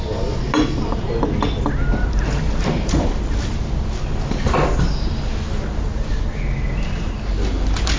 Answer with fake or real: real